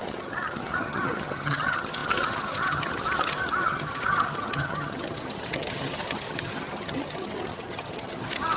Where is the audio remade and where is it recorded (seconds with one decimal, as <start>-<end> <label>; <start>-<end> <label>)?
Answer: 0.0-8.6 remade